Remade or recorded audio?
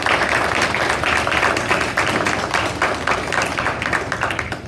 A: recorded